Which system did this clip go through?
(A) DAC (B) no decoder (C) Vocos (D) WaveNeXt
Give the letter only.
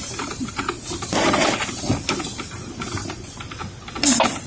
B